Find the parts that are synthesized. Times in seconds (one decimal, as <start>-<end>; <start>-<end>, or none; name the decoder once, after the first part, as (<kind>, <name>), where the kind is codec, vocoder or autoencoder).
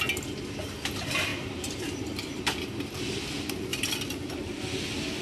1.3-2.4 (vocoder, BigVGAN v2); 3.7-4.4